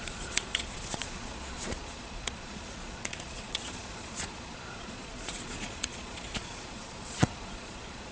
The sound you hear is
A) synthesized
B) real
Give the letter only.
A